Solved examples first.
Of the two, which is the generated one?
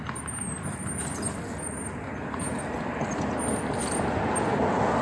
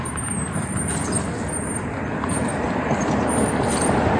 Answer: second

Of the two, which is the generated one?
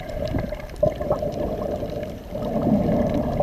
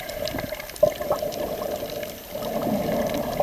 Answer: first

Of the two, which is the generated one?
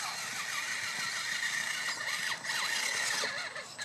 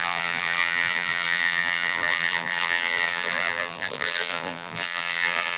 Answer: second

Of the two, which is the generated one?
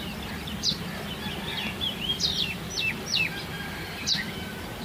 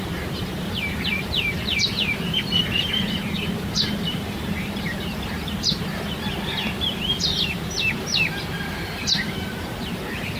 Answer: second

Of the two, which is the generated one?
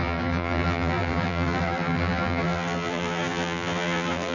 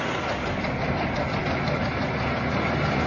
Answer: first